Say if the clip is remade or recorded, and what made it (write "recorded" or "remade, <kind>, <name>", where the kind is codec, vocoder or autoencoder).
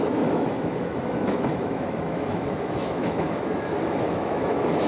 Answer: remade, autoencoder, DAC-VAE